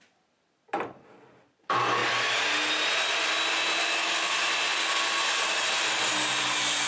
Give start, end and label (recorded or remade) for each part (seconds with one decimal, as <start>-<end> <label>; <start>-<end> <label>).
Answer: 0.0-3.8 recorded; 3.8-4.3 remade; 4.3-6.9 recorded